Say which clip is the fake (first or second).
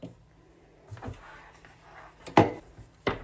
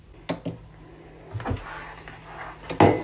first